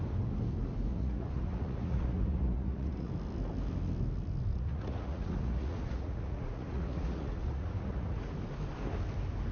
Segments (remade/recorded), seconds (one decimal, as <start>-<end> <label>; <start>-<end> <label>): 0.0-0.9 recorded; 0.9-3.1 remade; 3.1-4.5 recorded; 4.5-8.3 remade; 8.3-9.5 recorded